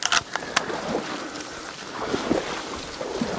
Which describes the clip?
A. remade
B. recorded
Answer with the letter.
B